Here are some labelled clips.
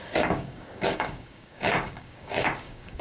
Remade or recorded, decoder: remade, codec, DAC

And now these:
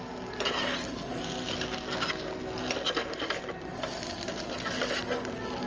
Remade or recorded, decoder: recorded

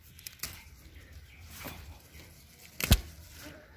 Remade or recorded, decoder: recorded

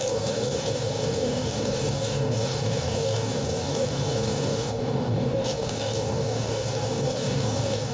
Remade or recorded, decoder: remade, codec, DAC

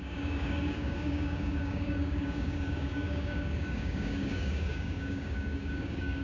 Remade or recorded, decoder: remade, codec, DAC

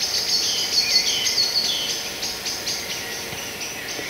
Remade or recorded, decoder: recorded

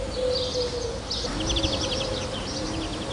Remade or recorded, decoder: recorded